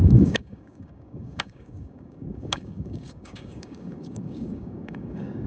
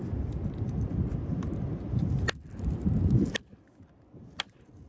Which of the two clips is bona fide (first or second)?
second